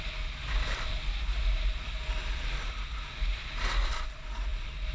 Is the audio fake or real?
real